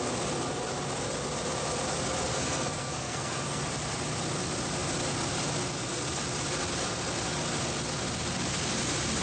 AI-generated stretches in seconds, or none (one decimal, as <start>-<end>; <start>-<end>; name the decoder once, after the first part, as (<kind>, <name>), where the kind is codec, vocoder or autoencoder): 2.3-3.6 (codec, SNAC)